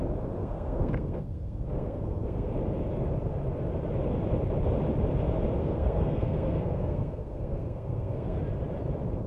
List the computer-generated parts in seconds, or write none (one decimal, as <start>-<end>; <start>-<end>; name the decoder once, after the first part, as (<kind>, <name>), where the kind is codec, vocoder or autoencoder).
0.4-2.5 (codec, SNAC); 5.6-8.4